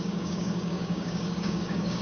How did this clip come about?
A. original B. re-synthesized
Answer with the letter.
B